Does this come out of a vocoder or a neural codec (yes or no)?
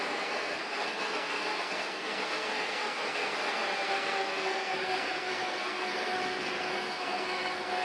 yes